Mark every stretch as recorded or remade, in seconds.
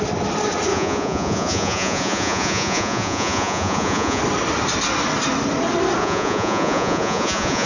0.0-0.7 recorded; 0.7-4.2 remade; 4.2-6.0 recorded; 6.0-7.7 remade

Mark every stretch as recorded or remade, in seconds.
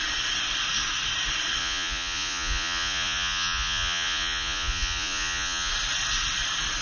0.0-1.6 recorded; 1.6-5.7 remade; 5.7-6.8 recorded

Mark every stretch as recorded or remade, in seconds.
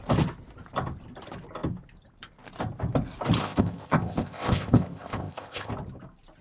0.0-3.4 recorded; 3.4-5.7 remade; 5.7-6.4 recorded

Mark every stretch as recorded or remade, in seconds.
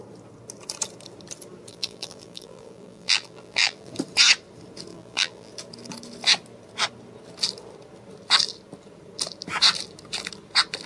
0.0-1.7 recorded; 1.7-3.9 remade; 3.9-4.9 recorded; 4.9-5.5 remade; 5.5-10.9 recorded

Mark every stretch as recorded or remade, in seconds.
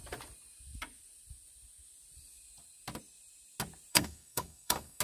0.0-3.9 recorded; 3.9-5.0 remade